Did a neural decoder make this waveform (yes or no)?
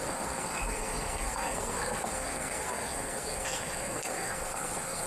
yes